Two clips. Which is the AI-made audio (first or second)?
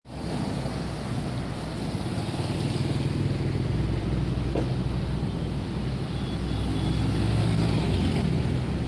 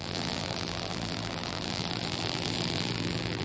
second